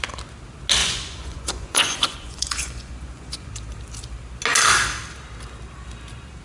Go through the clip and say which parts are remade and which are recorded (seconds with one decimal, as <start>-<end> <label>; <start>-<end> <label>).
0.0-0.8 recorded; 0.8-3.5 remade; 3.5-6.4 recorded